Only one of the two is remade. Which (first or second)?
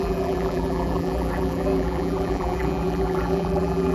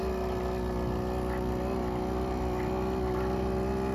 first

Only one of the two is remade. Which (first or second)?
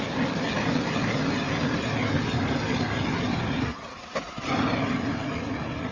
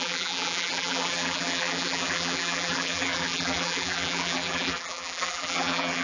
second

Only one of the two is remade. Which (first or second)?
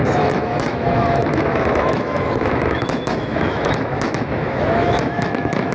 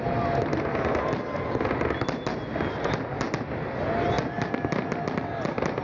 first